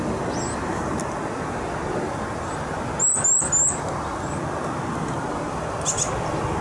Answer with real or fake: real